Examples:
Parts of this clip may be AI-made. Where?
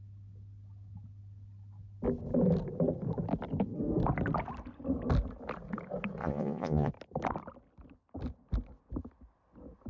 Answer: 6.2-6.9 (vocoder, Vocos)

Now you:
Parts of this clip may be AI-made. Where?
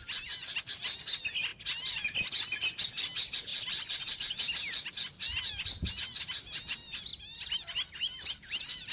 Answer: 7.1-8.9 (vocoder, BigVGAN v2)